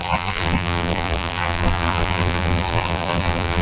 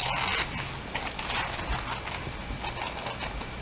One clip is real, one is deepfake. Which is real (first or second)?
second